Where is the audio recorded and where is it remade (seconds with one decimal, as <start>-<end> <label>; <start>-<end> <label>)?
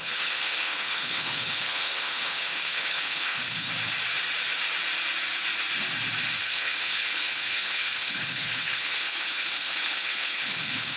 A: 0.0-3.7 remade; 3.7-6.4 recorded; 6.4-11.0 remade